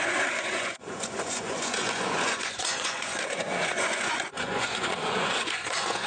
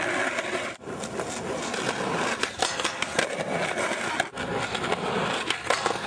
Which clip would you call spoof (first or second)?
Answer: first